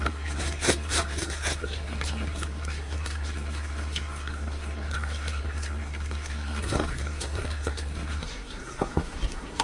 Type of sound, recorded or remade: remade